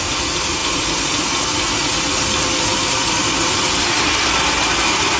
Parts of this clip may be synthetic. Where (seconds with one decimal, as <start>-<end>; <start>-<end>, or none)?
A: 0.6-1.2; 1.8-5.2